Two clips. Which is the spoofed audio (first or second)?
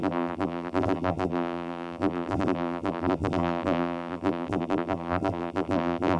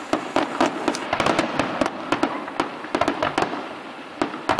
first